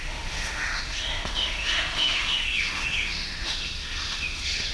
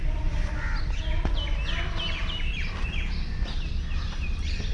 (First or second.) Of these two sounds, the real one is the second